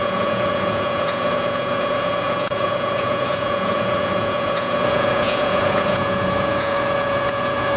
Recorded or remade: remade